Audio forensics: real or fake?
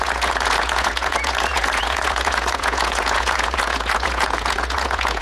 fake